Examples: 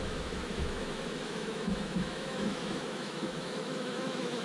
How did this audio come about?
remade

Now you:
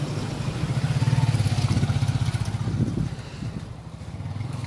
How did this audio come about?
recorded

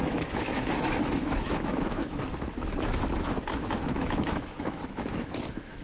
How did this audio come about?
remade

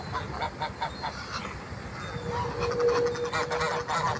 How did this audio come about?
recorded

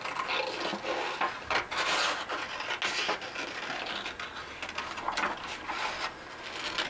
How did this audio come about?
recorded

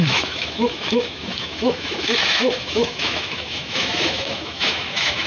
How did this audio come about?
remade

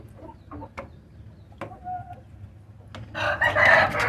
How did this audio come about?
recorded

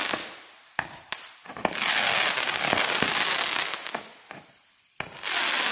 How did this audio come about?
recorded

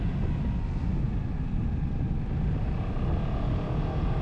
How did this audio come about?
recorded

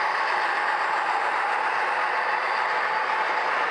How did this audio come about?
recorded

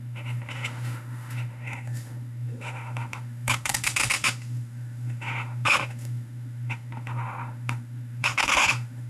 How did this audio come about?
remade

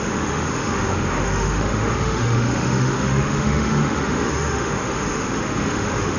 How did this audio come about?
remade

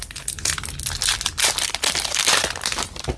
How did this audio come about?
recorded